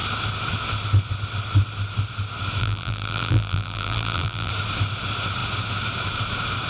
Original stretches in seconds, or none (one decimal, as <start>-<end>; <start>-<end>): 0.0-2.6; 4.5-6.7